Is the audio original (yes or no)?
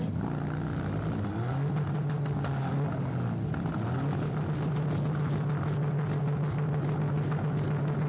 yes